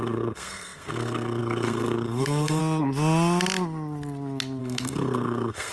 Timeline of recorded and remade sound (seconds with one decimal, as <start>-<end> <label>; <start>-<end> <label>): 0.0-2.6 remade; 2.6-4.6 recorded; 4.6-5.7 remade